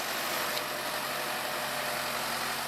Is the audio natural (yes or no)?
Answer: yes